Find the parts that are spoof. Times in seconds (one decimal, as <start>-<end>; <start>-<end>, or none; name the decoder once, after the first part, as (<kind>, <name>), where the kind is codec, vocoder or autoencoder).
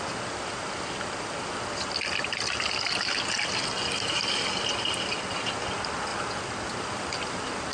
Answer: none